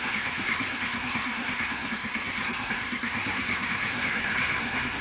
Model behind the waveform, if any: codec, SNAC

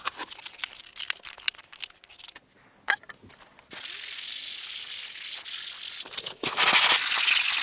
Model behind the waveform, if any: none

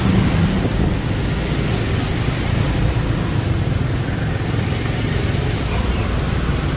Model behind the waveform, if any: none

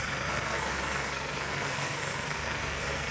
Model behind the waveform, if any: codec, SNAC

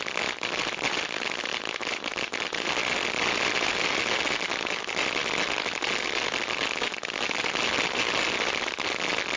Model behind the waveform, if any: none